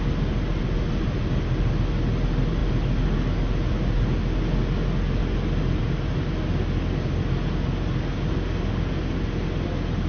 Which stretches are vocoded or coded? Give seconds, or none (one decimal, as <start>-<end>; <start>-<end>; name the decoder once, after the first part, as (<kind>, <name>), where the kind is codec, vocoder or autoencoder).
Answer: none